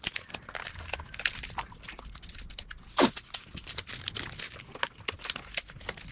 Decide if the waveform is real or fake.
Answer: real